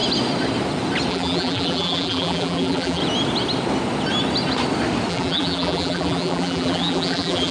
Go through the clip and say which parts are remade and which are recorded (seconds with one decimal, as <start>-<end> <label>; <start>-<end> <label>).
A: 0.0-1.1 recorded; 1.1-3.0 remade; 3.0-5.1 recorded; 5.1-7.5 remade

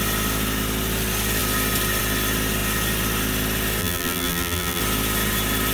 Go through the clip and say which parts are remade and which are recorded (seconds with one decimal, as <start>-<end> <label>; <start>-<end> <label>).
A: 0.0-3.8 recorded; 3.8-4.8 remade; 4.8-5.7 recorded

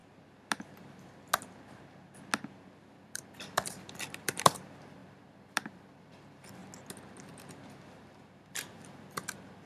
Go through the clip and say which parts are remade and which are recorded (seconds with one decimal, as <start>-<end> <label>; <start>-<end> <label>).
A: 0.0-2.9 recorded; 2.9-6.6 remade; 6.6-8.0 recorded; 8.0-9.7 remade

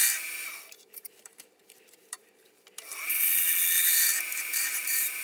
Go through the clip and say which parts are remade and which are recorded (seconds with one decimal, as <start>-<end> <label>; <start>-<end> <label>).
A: 0.0-0.7 recorded; 0.7-2.9 remade; 2.9-4.4 recorded; 4.4-5.2 remade

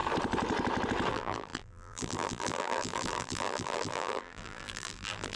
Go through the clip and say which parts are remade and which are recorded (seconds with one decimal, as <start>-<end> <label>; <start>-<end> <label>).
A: 0.0-1.1 recorded; 1.1-5.4 remade

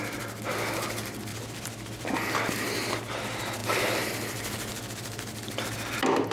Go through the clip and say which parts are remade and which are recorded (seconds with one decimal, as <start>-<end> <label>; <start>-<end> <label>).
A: 0.0-6.3 recorded

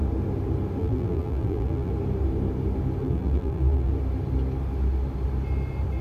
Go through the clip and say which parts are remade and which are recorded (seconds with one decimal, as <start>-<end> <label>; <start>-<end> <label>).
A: 0.0-0.8 recorded; 0.8-1.9 remade; 1.9-3.0 recorded; 3.0-3.9 remade; 3.9-6.0 recorded